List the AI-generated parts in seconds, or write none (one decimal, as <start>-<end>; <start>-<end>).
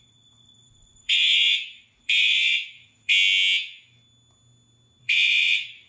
0.0-3.1; 5.0-5.9